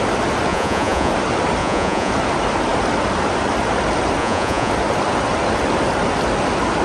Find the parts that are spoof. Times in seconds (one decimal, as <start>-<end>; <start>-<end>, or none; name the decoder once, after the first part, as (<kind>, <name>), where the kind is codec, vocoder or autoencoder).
0.5-1.1 (vocoder, Vocos); 1.6-2.1; 4.2-4.7